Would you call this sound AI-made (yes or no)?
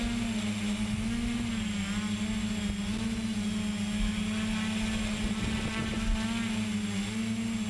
no